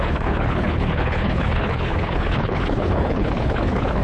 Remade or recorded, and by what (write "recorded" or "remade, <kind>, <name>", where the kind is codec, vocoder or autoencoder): remade, codec, HILCodec